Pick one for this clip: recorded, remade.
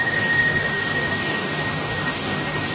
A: remade